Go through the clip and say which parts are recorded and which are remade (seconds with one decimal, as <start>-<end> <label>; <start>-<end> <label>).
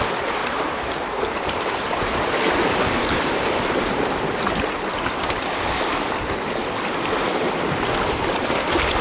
0.0-0.4 recorded; 0.4-3.4 remade; 3.4-9.0 recorded